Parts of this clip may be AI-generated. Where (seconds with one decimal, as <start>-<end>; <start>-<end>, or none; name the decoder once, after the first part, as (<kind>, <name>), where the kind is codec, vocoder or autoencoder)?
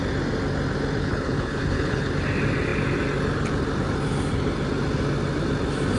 1.0-2.1 (codec, HILCodec)